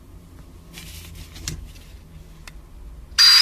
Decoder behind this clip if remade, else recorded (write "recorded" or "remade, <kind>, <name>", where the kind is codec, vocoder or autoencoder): recorded